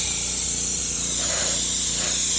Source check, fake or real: real